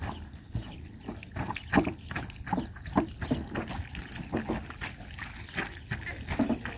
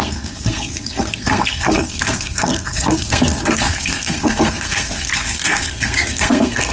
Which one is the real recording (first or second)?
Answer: first